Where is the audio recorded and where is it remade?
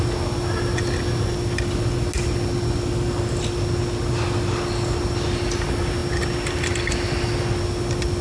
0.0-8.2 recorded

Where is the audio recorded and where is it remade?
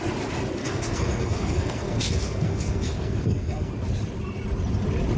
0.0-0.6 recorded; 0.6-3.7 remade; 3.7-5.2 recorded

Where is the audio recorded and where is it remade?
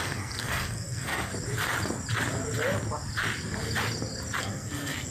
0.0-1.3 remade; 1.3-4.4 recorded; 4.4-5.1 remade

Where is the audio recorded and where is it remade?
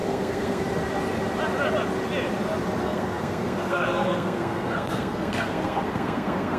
0.0-0.6 remade; 0.6-2.8 recorded; 2.8-6.6 remade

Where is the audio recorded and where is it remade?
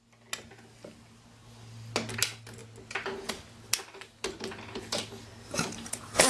0.0-6.3 recorded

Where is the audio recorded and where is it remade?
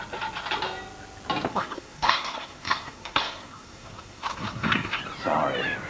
0.0-1.5 recorded; 1.5-5.0 remade; 5.0-5.9 recorded